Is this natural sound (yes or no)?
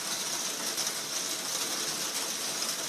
yes